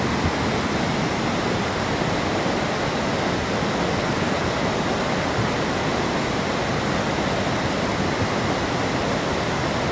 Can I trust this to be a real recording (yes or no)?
yes